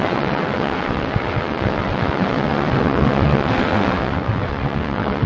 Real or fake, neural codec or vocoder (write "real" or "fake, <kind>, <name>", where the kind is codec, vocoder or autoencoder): fake, vocoder, WaveNeXt